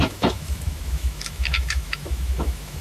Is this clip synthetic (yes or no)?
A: yes